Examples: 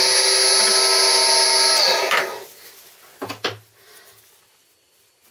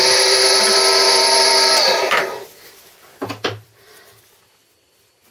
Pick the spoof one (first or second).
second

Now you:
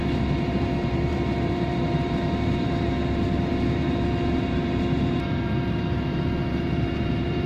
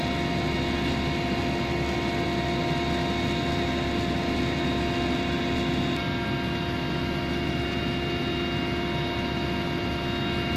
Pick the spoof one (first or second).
first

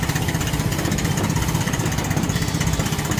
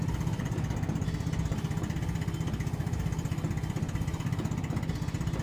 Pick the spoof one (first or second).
first